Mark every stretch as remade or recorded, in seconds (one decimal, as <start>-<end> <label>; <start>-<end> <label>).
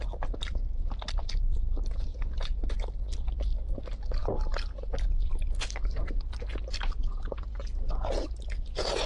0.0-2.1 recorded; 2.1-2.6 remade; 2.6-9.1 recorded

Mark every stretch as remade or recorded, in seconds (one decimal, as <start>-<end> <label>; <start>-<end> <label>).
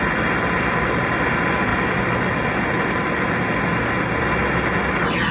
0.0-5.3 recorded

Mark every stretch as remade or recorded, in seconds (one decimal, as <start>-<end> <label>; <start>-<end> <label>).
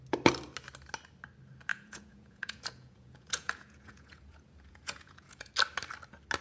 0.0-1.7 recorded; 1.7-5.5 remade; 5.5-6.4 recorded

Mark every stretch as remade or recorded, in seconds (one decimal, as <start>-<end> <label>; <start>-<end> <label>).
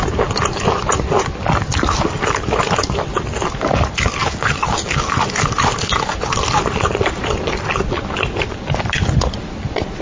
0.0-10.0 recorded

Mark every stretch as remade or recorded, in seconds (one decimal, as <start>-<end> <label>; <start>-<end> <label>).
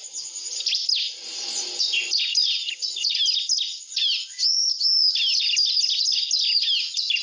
0.0-7.2 recorded